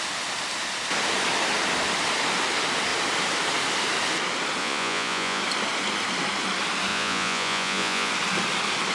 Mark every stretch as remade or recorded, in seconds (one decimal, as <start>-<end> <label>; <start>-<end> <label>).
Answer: 0.0-4.6 recorded; 4.6-5.4 remade; 5.4-6.9 recorded; 6.9-8.1 remade; 8.1-8.9 recorded